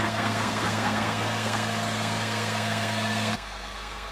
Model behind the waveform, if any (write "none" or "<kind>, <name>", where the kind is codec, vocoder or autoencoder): codec, SNAC